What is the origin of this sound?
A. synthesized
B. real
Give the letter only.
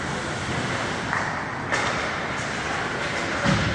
B